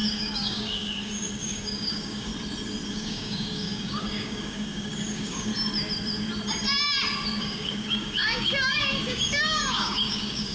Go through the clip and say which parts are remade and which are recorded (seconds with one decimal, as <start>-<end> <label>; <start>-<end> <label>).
0.0-2.3 remade; 2.3-2.9 recorded; 2.9-5.5 remade; 5.5-7.4 recorded; 7.4-10.5 remade